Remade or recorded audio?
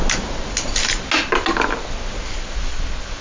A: recorded